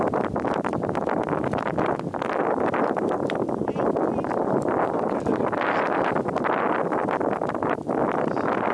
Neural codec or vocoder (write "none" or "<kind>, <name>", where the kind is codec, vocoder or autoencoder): none